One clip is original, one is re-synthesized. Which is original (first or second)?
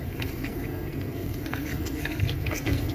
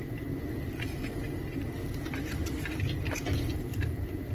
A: second